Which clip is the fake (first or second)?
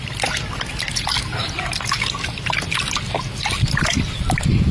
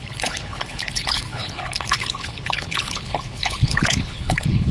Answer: second